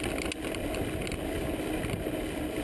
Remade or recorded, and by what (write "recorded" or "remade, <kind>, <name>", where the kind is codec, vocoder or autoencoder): recorded